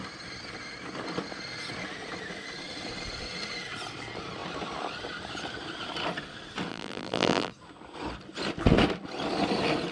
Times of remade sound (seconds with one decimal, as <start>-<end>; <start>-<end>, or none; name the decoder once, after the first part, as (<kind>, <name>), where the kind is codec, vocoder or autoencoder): 6.7-7.5 (vocoder, BigVGAN v2)